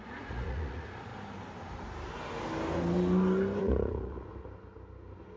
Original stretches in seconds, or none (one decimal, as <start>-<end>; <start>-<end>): 1.1-3.6; 4.3-5.4